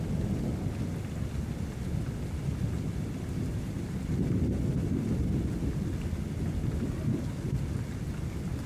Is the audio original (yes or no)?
yes